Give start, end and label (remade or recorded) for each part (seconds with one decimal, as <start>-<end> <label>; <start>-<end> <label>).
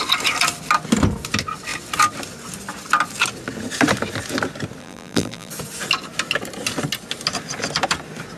0.0-4.8 recorded; 4.8-5.5 remade; 5.5-8.4 recorded